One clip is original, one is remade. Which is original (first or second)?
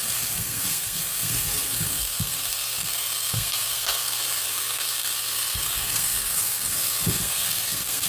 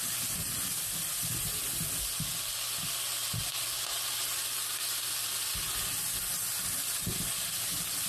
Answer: second